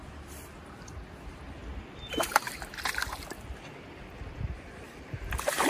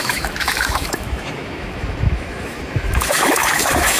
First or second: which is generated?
second